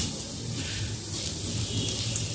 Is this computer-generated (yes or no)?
no